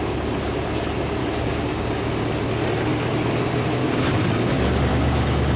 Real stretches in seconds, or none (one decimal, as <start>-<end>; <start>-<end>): 0.0-1.2; 2.1-3.8; 4.5-4.9